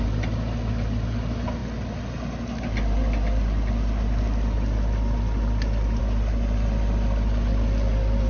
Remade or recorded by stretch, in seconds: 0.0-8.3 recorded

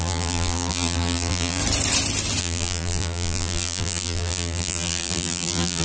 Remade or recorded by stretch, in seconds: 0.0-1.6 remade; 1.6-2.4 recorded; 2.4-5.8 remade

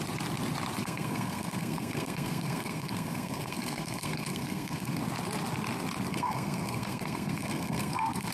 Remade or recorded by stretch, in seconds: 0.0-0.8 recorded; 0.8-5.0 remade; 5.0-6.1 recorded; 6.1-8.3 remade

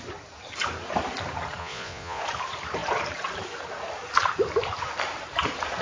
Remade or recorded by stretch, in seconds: 0.0-1.6 recorded; 1.6-2.2 remade; 2.2-5.8 recorded

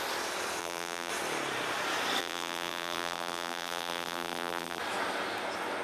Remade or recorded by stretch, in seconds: 0.0-0.6 recorded; 0.6-1.1 remade; 1.1-2.2 recorded; 2.2-4.8 remade; 4.8-5.8 recorded